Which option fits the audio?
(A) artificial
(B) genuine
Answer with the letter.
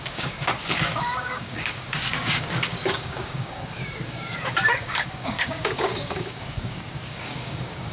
A